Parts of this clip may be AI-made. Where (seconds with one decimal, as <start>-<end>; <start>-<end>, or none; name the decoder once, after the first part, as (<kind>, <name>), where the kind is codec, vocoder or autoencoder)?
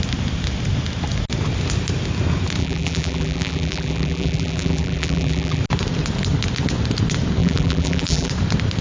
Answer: 2.6-5.6 (vocoder, BigVGAN v2); 7.4-8.3